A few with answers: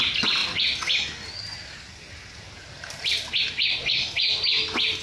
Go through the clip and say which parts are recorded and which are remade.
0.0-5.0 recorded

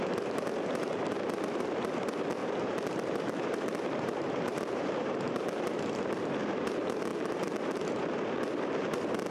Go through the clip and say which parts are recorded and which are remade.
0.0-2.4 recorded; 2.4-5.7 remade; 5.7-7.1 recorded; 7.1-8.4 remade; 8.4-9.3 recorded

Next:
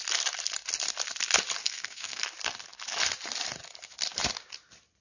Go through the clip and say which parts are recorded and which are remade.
0.0-1.6 recorded; 1.6-2.2 remade; 2.2-5.0 recorded

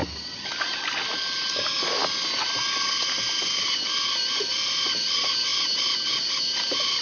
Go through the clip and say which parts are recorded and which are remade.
0.0-7.0 recorded

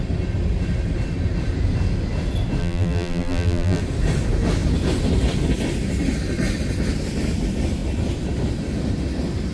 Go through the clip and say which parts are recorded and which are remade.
0.0-2.6 recorded; 2.6-3.8 remade; 3.8-9.5 recorded